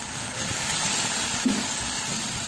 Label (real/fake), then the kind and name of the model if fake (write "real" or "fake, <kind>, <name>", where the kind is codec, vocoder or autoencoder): real